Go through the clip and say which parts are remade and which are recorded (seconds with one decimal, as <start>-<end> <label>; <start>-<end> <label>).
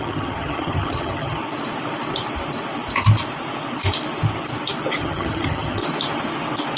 0.0-1.4 remade; 1.4-5.0 recorded; 5.0-5.8 remade; 5.8-6.8 recorded